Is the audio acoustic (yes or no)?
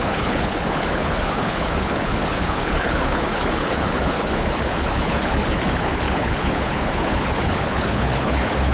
no